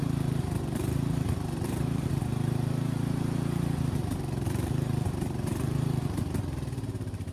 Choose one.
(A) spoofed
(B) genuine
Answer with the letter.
A